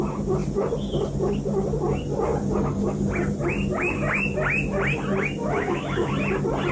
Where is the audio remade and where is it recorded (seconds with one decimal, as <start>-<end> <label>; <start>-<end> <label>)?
0.0-5.4 recorded; 5.4-6.1 remade; 6.1-6.7 recorded